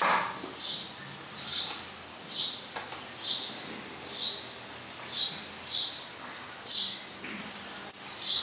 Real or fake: real